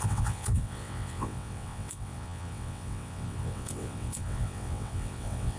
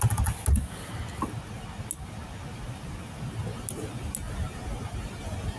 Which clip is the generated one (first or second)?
first